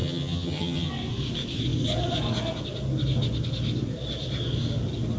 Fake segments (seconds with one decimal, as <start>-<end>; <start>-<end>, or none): 0.0-0.9